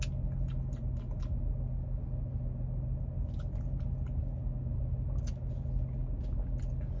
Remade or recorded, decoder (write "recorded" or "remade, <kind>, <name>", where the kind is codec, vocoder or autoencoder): recorded